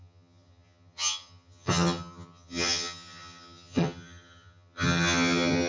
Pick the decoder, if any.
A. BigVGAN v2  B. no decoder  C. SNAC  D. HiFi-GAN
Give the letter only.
D